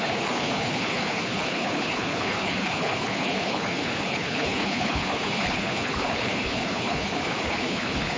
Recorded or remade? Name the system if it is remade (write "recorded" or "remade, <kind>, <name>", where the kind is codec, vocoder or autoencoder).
remade, codec, HILCodec